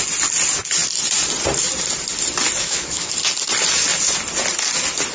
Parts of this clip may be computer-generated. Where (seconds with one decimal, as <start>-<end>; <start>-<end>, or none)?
2.6-3.1